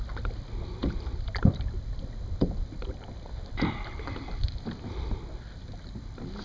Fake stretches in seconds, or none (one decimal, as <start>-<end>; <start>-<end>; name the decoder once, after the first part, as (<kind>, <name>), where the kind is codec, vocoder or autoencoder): none